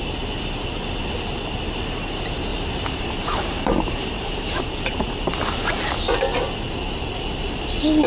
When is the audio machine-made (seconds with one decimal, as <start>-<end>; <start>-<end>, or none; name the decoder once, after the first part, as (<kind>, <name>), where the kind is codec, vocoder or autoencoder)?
2.5-5.4 (vocoder, BigVGAN v2)